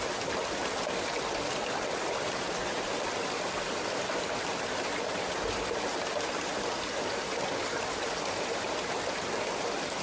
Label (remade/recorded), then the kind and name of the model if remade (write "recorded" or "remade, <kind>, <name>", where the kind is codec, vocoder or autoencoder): recorded